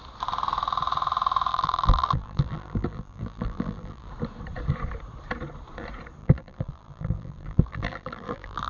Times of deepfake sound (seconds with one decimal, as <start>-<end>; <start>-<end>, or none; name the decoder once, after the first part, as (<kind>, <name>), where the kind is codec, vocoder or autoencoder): 1.5-4.1 (vocoder, BigVGAN v2); 6.2-8.7